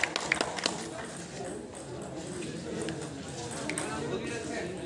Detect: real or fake real